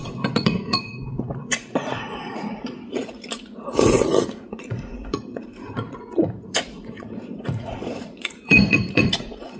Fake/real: fake